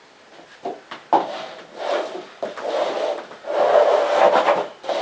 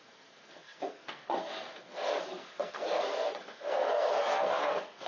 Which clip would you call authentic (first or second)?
first